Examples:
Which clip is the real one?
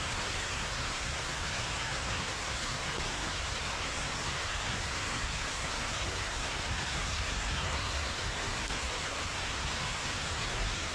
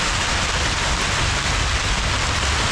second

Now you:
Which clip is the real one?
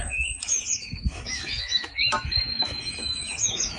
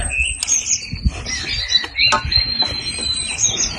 second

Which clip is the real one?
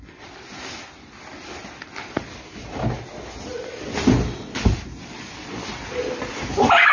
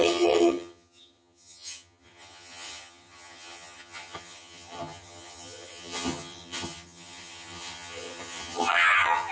first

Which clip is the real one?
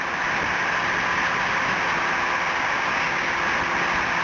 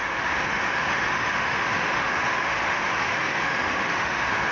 first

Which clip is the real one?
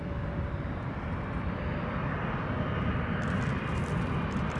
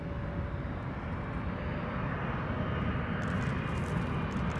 second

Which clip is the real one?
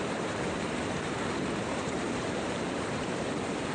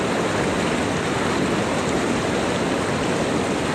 second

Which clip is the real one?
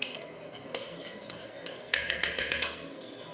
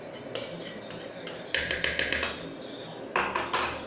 second